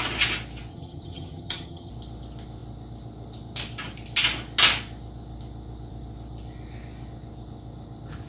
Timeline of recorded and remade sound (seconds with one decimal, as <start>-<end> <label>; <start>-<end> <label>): 0.0-0.7 recorded; 0.7-1.9 remade; 1.9-8.3 recorded

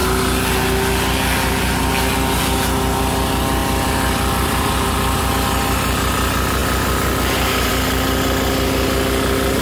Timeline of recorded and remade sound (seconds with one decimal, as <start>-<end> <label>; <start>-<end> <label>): 0.0-3.6 recorded; 3.6-5.3 remade; 5.3-9.6 recorded

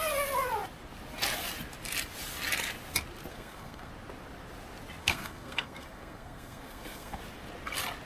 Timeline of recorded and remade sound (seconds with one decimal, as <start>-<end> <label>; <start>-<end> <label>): 0.0-3.3 recorded; 3.3-3.9 remade; 3.9-5.0 recorded; 5.0-7.2 remade; 7.2-8.1 recorded

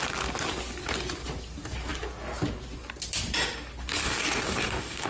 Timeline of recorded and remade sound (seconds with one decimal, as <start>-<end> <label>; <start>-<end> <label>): 0.0-4.0 recorded; 4.0-5.1 remade

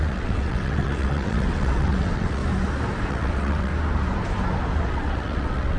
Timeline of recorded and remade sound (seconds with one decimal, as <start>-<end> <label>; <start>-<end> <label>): 0.0-2.4 remade; 2.4-3.1 recorded; 3.1-3.7 remade; 3.7-4.9 recorded; 4.9-5.8 remade

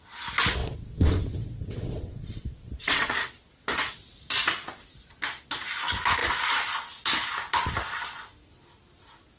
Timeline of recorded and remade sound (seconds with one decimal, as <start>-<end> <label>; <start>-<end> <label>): 0.0-0.6 recorded; 0.6-3.1 remade; 3.1-9.4 recorded

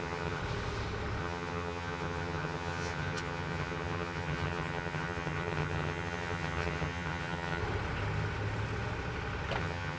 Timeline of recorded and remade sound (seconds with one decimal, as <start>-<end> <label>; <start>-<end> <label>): 0.0-0.4 remade; 0.4-1.2 recorded; 1.2-7.6 remade; 7.6-9.6 recorded; 9.6-10.0 remade

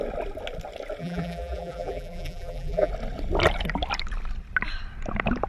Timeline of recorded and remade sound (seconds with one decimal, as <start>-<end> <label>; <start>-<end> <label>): 0.0-1.0 recorded; 1.0-2.9 remade; 2.9-5.5 recorded